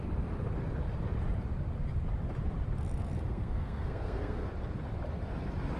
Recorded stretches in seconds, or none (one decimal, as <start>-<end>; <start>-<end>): 0.0-3.3; 4.5-5.8